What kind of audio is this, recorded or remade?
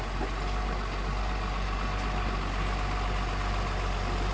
recorded